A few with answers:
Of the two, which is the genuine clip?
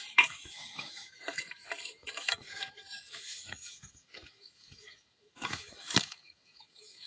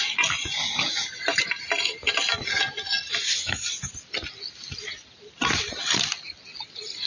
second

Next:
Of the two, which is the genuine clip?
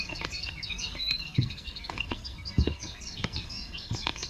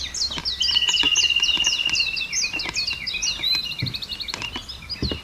second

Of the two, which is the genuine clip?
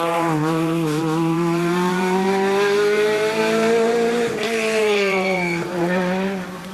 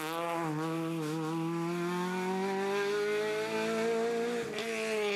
second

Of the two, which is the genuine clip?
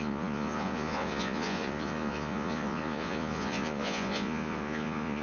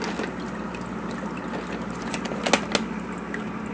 second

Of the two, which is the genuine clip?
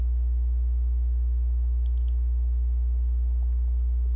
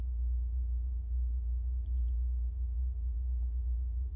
first